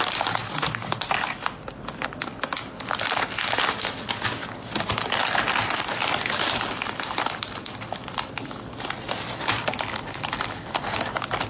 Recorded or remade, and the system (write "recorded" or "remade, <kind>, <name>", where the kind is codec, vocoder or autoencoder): recorded